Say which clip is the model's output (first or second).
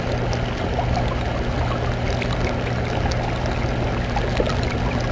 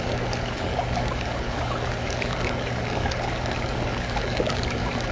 second